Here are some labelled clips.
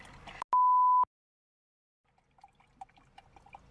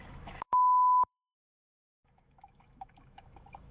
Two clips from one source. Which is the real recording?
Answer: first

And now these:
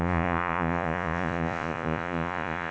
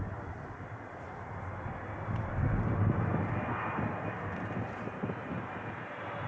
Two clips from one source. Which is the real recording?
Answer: second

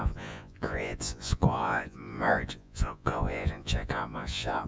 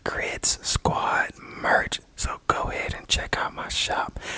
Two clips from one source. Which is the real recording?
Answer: second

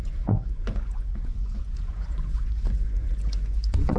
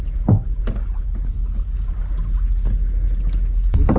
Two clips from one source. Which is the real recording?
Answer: second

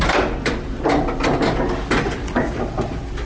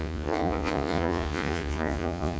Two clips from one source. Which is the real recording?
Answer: first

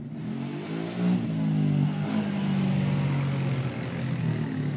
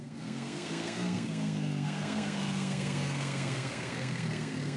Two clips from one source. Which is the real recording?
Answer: first